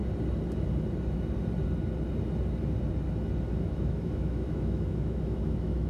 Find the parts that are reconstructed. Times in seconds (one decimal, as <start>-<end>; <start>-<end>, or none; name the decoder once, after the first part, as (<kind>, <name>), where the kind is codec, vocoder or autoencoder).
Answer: 3.5-5.9 (autoencoder, DAC-VAE)